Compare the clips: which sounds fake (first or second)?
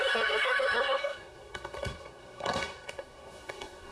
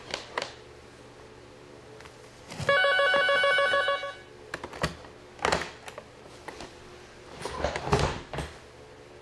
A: first